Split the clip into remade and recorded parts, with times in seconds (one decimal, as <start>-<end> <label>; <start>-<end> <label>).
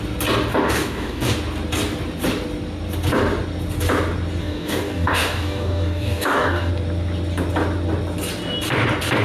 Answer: 0.0-0.5 recorded; 0.5-1.3 remade; 1.3-4.4 recorded; 4.4-6.7 remade; 6.7-9.2 recorded